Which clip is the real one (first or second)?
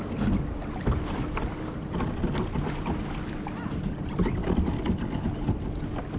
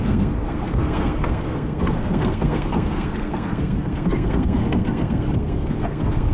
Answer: first